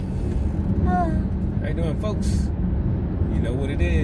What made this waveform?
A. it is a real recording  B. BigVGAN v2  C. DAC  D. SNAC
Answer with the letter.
A